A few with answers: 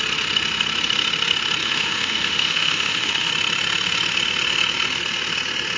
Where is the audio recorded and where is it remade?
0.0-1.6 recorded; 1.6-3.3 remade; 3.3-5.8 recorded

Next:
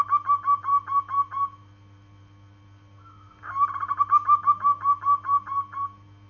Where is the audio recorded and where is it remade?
0.0-6.3 recorded

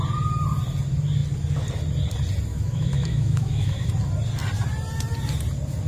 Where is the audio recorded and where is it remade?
0.0-2.5 recorded; 2.5-3.9 remade; 3.9-5.9 recorded